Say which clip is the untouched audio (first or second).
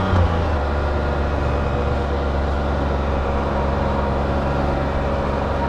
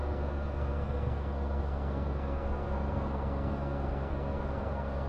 first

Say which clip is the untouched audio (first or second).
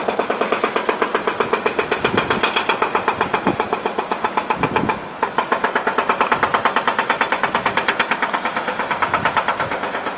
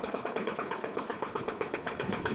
first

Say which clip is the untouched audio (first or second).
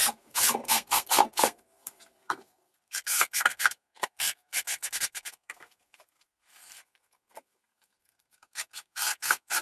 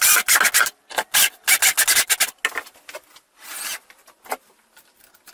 second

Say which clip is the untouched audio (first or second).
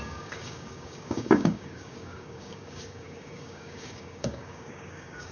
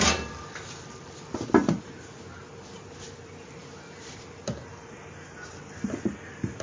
second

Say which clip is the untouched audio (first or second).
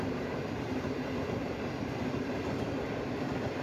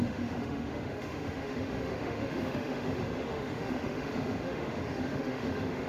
first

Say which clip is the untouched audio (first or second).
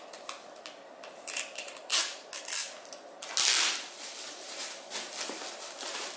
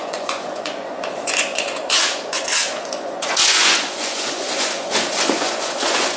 first